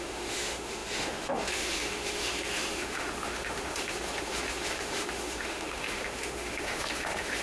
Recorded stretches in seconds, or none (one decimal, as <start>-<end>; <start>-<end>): none